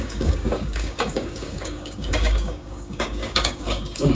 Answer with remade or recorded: remade